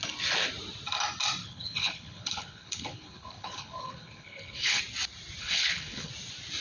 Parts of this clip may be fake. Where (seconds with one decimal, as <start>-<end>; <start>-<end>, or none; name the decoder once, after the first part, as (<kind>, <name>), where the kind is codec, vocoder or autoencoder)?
1.4-4.8 (codec, HILCodec); 5.4-6.1